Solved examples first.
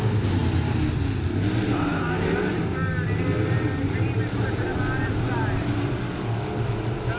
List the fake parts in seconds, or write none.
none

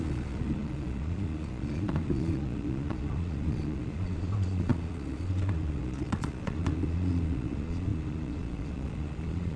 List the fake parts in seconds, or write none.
0.0-9.6 (vocoder, Vocos)

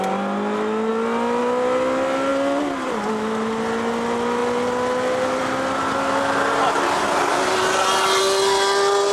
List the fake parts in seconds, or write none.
2.3-3.1 (vocoder, BigVGAN v2); 4.4-8.2